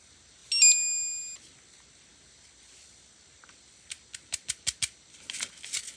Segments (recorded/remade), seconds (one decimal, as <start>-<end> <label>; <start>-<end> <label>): 0.0-6.0 recorded